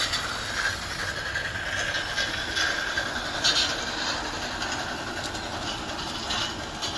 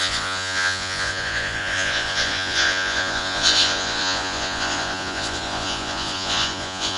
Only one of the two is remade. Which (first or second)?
second